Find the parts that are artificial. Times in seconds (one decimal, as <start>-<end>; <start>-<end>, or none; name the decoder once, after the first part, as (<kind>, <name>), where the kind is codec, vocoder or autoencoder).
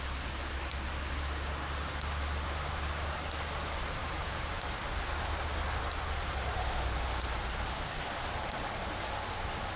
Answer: 4.0-4.6 (vocoder, Vocos)